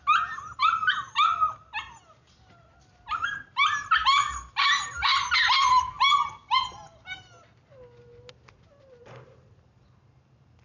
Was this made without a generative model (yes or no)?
yes